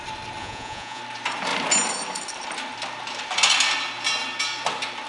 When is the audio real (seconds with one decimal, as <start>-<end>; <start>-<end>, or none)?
0.0-0.4; 1.0-5.1